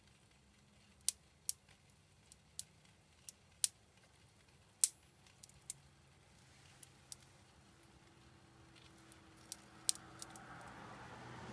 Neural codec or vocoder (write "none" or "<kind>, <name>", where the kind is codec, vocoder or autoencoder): none